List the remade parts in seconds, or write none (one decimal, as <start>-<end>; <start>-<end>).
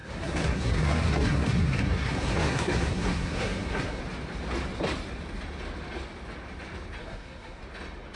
0.0-4.0; 7.0-7.6